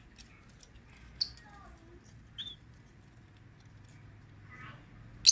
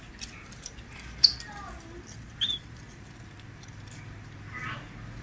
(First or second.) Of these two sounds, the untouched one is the first